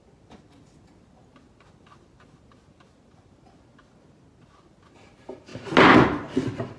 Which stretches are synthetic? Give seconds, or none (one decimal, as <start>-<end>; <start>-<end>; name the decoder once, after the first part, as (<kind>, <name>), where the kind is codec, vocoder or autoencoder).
none